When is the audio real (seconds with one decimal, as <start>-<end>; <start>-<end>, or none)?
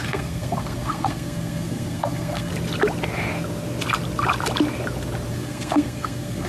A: 2.5-5.3